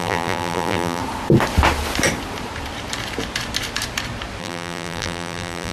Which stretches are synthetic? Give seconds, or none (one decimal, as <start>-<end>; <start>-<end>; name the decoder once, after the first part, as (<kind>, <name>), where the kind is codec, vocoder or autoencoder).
0.0-1.0 (vocoder, BigVGAN v2); 4.4-5.7